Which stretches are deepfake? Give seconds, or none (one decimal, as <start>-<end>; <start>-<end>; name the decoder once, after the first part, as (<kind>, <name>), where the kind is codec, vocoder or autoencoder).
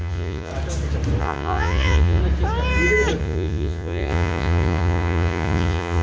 0.0-0.5 (vocoder, Vocos); 1.2-2.2; 3.2-6.0